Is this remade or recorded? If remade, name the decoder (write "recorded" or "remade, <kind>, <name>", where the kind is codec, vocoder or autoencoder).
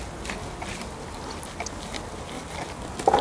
recorded